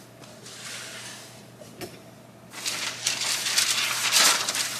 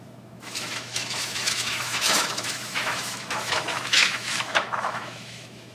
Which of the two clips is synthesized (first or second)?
second